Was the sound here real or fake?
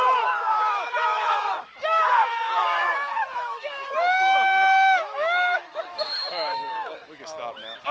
fake